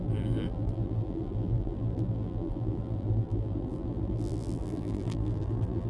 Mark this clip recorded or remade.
remade